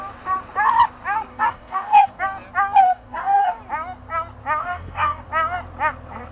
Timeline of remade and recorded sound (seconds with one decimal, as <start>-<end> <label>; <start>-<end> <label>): 0.0-1.3 recorded; 1.3-2.2 remade; 2.2-2.8 recorded; 2.8-3.6 remade; 3.6-4.6 recorded; 4.6-5.3 remade; 5.3-6.3 recorded

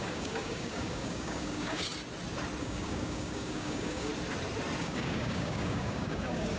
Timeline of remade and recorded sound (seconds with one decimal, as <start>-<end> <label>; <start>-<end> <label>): 0.0-1.9 remade; 1.9-2.6 recorded; 2.6-4.1 remade; 4.1-4.8 recorded; 4.8-6.6 remade

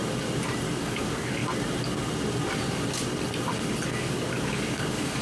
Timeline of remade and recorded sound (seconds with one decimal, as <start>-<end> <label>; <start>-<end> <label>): 0.0-0.8 recorded; 0.8-1.4 remade; 1.4-3.9 recorded; 3.9-5.2 remade

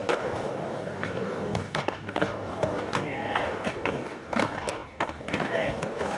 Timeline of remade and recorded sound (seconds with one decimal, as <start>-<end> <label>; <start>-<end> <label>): 0.0-6.2 remade

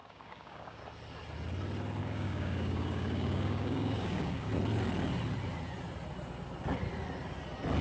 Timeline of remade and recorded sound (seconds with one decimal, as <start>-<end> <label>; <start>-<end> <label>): 0.0-0.8 remade; 0.8-2.0 recorded; 2.0-4.5 remade; 4.5-7.8 recorded